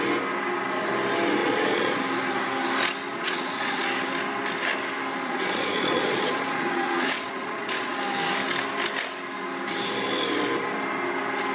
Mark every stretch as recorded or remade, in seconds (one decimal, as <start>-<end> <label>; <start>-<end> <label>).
0.0-1.4 recorded; 1.4-2.0 remade; 2.0-3.1 recorded; 3.1-3.8 remade; 3.8-5.2 recorded; 5.2-8.0 remade; 8.0-11.5 recorded